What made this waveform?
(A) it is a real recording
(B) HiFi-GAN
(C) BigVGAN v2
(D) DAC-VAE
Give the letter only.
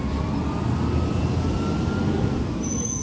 A